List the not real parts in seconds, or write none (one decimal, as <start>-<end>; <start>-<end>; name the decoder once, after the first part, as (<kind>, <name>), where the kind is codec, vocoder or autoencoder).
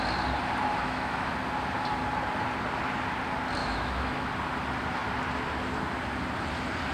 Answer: 0.8-1.3 (autoencoder, DAC-VAE); 3.6-4.3